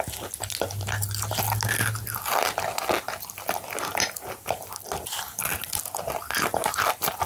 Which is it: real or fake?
real